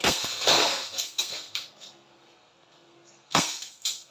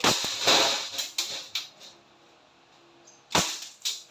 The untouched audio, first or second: second